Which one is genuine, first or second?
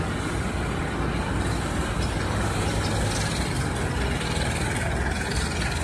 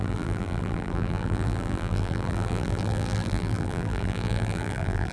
first